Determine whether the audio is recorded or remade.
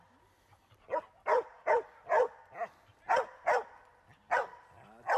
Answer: recorded